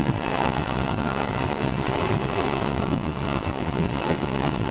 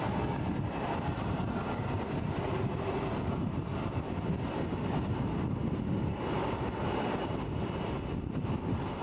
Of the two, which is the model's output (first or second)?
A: first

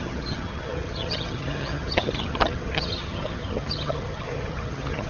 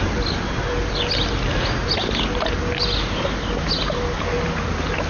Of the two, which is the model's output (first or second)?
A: first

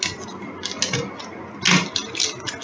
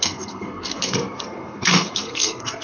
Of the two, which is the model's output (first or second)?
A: second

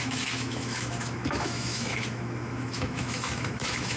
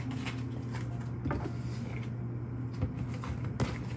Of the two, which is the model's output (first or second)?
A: first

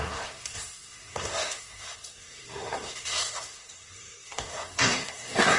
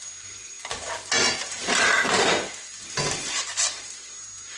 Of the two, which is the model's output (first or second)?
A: first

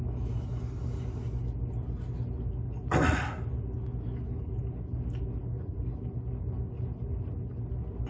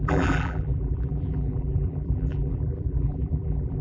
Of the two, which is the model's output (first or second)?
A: second